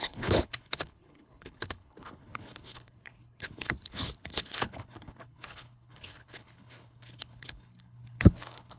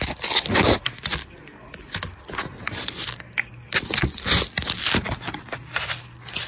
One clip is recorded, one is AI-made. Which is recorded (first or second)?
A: second